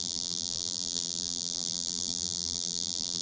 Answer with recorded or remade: remade